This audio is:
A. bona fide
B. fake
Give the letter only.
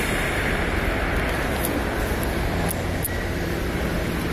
A